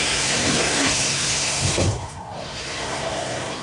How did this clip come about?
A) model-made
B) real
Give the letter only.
A